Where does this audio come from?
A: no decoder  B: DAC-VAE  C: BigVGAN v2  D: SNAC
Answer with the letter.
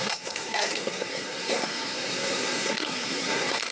D